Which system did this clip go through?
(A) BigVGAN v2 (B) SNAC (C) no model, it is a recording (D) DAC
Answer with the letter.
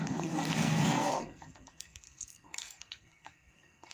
B